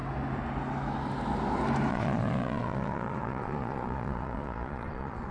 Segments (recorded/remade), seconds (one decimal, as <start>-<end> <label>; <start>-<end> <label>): 0.0-1.9 recorded; 1.9-5.3 remade

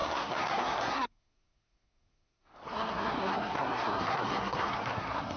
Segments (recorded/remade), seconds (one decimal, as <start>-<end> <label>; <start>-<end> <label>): 0.0-5.4 remade

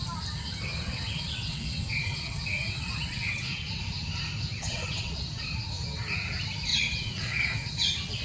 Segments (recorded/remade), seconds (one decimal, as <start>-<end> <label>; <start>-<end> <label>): 0.0-0.7 recorded; 0.7-3.8 remade; 3.8-4.5 recorded; 4.5-5.4 remade; 5.4-6.7 recorded; 6.7-7.7 remade; 7.7-8.2 recorded